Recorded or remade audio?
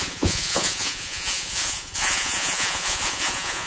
remade